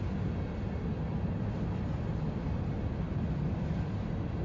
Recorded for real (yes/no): yes